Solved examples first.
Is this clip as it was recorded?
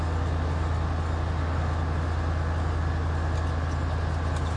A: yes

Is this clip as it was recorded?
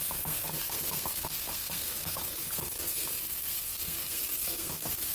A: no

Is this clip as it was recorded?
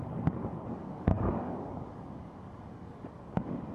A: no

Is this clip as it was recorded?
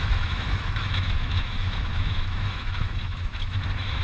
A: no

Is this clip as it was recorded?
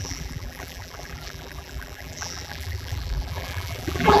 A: no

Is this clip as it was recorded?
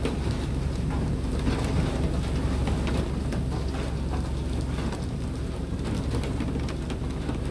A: yes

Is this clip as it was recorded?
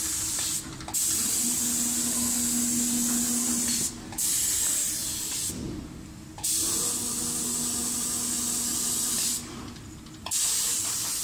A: yes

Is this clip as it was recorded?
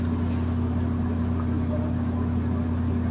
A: yes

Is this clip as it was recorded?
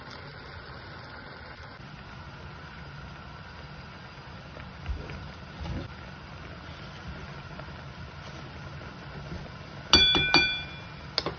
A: yes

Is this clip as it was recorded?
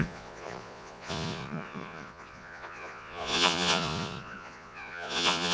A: no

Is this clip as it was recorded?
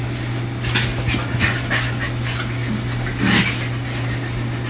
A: yes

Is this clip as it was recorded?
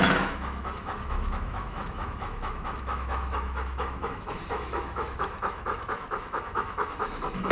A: no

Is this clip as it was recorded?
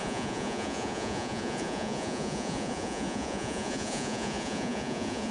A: no